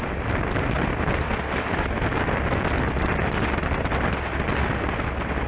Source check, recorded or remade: recorded